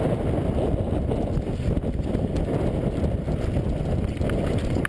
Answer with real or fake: real